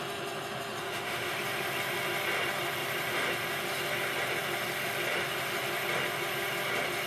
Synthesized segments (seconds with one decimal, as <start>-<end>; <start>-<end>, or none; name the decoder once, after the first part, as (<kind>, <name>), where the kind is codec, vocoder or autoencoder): 0.8-1.3 (autoencoder, DAC-VAE)